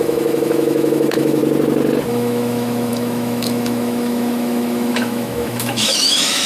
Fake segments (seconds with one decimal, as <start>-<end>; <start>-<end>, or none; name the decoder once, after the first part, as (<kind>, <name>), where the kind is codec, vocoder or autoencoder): 0.0-1.4 (autoencoder, DAC-VAE); 2.1-6.5